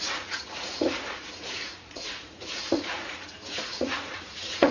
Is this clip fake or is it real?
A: fake